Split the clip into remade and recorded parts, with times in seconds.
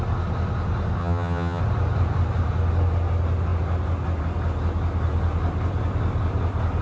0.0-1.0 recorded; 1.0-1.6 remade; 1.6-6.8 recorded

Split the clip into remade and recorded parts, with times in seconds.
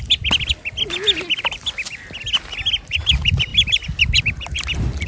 0.0-5.1 recorded